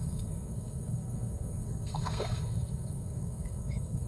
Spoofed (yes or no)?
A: yes